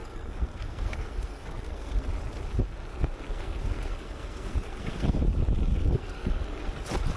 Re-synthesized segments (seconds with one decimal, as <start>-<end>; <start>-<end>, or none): 0.0-2.1; 2.9-5.2; 5.8-6.8